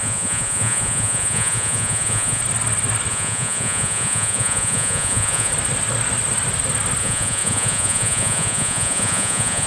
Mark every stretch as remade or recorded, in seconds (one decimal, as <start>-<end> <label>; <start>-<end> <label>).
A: 0.0-2.4 remade; 2.4-3.1 recorded; 3.1-5.5 remade; 5.5-7.0 recorded; 7.0-9.7 remade